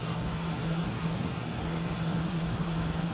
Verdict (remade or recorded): remade